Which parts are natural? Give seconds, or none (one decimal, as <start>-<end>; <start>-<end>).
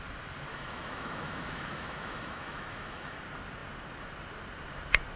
0.0-0.5; 3.2-5.2